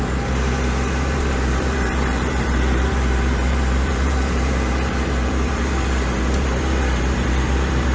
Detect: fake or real fake